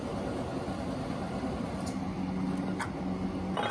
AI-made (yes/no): no